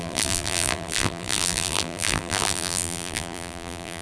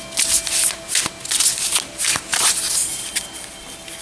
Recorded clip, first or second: second